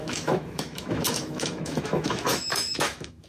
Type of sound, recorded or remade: remade